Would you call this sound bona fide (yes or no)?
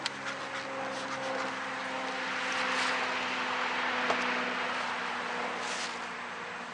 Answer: yes